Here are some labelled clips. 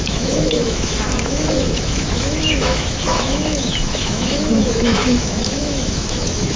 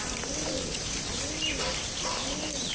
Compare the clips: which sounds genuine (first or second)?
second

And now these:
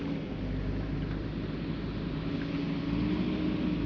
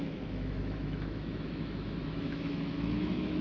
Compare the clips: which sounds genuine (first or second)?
first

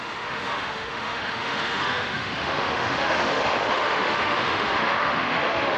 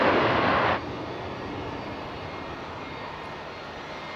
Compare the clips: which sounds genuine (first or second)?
second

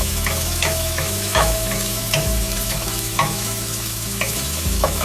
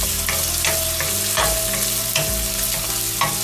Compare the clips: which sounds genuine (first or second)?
second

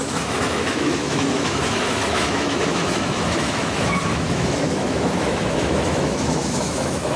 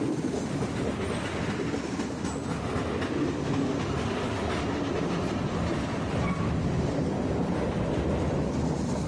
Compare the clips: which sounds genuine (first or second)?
second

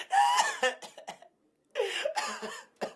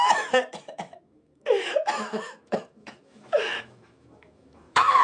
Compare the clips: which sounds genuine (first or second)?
first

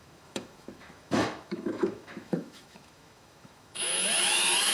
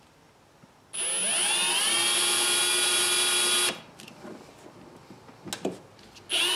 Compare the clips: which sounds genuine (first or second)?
second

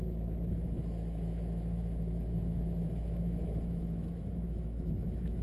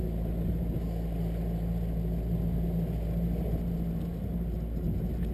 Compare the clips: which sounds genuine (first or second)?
second